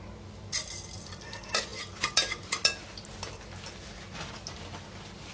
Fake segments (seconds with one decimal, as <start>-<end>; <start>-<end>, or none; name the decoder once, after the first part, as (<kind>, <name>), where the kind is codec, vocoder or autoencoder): none